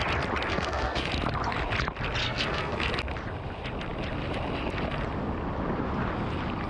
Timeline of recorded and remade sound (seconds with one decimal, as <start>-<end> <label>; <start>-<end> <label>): 0.0-0.5 recorded; 0.5-1.1 remade; 1.1-2.2 recorded; 2.2-2.9 remade; 2.9-6.7 recorded

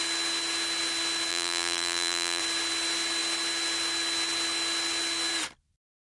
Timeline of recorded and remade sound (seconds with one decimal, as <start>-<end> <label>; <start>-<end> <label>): 0.0-1.3 recorded; 1.3-2.4 remade; 2.4-6.1 recorded

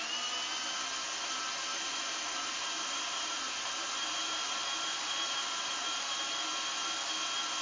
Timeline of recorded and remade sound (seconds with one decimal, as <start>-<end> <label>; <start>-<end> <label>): 0.0-1.7 recorded; 1.7-6.3 remade; 6.3-7.6 recorded

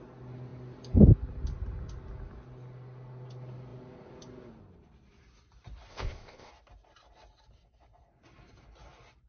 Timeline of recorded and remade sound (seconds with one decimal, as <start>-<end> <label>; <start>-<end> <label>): 0.0-5.9 recorded; 5.9-6.5 remade; 6.5-9.3 recorded

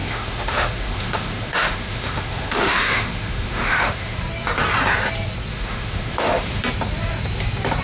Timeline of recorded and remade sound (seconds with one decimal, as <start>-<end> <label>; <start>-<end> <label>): 0.0-4.2 remade; 4.2-5.5 recorded; 5.5-6.6 remade; 6.6-7.8 recorded

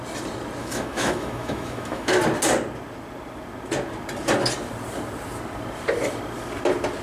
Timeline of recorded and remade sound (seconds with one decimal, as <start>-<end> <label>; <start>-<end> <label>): 0.0-0.6 recorded; 0.6-2.2 remade; 2.2-7.0 recorded